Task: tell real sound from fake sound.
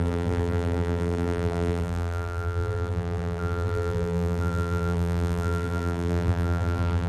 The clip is fake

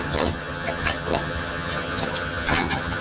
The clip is fake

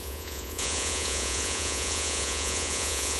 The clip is fake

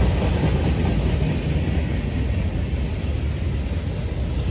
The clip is real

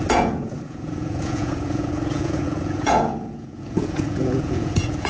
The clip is fake